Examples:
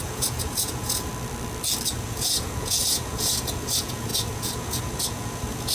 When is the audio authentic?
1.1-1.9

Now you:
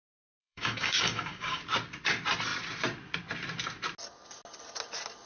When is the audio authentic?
0.0-0.4; 1.6-5.3